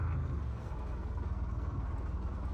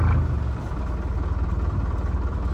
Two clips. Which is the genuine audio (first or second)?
second